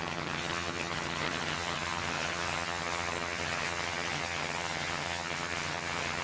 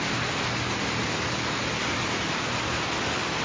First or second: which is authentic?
second